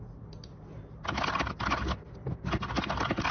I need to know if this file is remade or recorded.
recorded